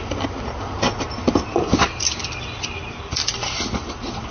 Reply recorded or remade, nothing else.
recorded